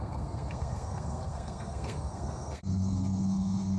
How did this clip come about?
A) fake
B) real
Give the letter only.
A